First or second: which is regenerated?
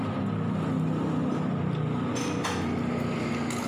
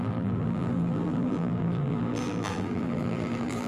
second